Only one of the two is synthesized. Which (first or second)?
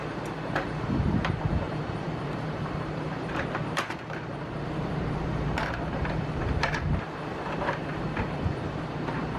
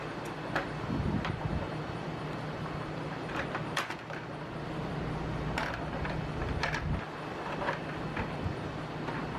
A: first